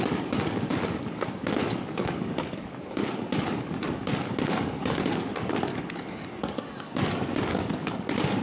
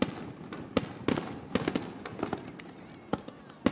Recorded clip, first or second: second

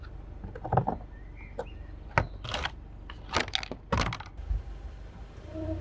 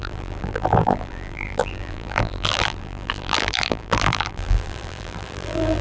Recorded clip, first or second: first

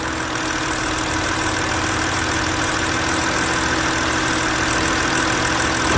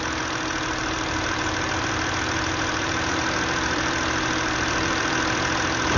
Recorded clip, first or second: first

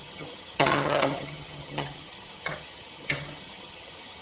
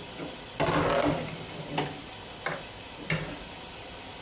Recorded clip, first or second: second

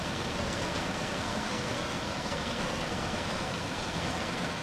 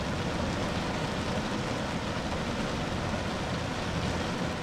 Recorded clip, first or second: second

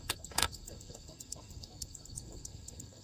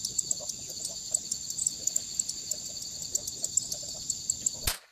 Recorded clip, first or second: second